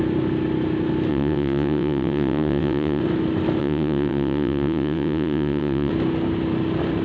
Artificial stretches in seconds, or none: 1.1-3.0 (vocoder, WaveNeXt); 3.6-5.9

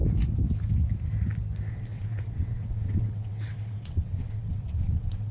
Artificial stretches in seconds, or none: 1.7-5.3 (vocoder, WaveNeXt)

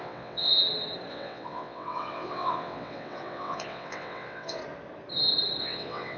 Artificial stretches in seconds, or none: 0.0-0.5 (vocoder, WaveNeXt); 1.1-4.6; 5.6-6.2

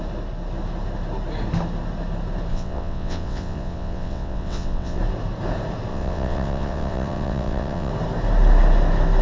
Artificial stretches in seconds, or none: 2.5-5.0 (vocoder, WaveNeXt); 5.9-7.9

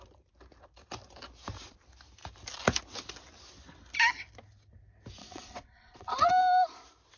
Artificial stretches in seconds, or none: 5.2-6.3 (vocoder, WaveNeXt)